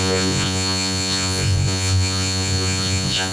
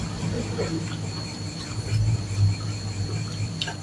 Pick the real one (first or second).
second